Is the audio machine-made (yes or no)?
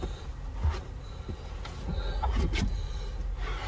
no